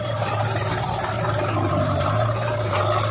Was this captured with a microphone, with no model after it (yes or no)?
no